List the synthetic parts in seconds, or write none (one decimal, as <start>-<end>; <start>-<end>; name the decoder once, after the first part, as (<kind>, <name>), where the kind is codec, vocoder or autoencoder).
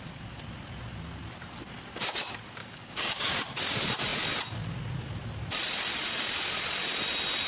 2.6-3.2 (codec, DAC)